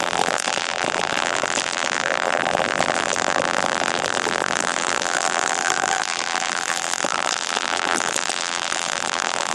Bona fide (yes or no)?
no